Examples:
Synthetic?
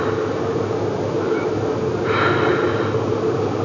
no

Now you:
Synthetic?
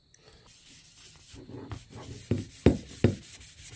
no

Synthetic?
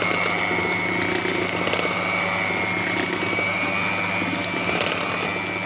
no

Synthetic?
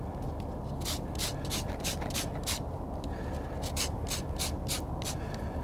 no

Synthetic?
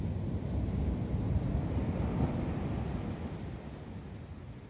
no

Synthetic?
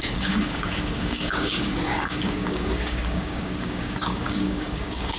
yes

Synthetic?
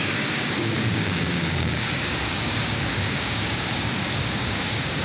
yes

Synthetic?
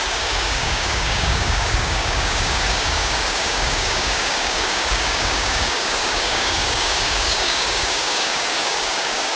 yes